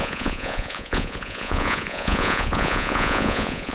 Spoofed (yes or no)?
yes